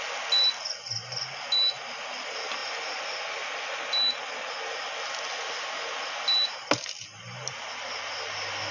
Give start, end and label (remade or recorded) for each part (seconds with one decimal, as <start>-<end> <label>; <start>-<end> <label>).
0.0-8.7 recorded